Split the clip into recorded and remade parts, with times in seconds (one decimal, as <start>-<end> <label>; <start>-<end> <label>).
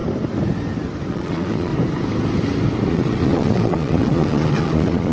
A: 0.0-1.1 recorded; 1.1-1.7 remade; 1.7-2.9 recorded; 2.9-5.1 remade